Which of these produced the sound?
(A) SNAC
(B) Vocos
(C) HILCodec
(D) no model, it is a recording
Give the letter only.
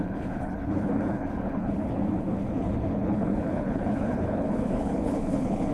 C